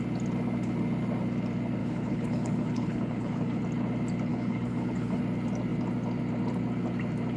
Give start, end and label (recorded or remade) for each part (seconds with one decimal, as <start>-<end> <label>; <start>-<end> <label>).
0.0-1.8 recorded; 1.8-3.6 remade; 3.6-4.3 recorded; 4.3-5.2 remade; 5.2-7.4 recorded